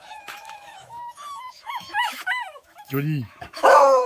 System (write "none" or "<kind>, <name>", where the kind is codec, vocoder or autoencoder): autoencoder, DAC-VAE